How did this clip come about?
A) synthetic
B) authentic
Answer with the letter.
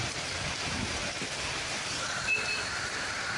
A